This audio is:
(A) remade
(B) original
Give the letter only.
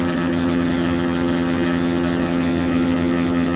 A